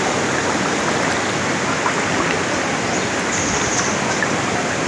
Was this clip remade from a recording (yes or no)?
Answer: no